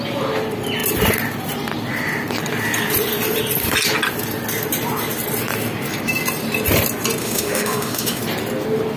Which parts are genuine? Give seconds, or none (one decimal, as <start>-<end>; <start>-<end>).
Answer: 0.0-7.2; 8.2-9.0